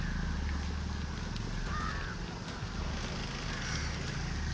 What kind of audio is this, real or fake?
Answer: real